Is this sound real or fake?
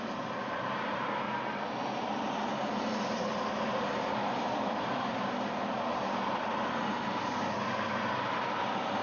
real